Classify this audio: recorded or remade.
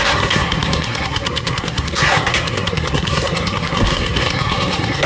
remade